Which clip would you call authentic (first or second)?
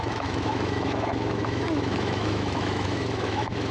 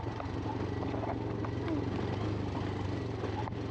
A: second